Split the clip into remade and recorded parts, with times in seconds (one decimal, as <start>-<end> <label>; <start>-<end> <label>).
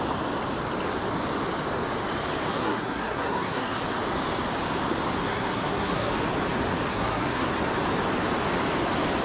0.0-2.5 recorded; 2.5-3.8 remade; 3.8-5.2 recorded; 5.2-6.1 remade; 6.1-6.9 recorded; 6.9-7.5 remade; 7.5-9.2 recorded